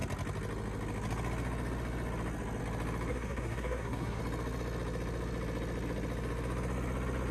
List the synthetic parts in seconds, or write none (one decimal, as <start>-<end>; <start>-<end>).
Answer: 3.1-4.2